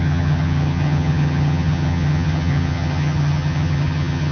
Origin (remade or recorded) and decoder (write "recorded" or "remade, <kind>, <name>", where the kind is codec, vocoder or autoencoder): remade, vocoder, HiFi-GAN